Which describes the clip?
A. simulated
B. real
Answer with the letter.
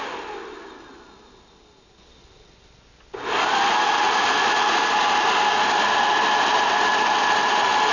B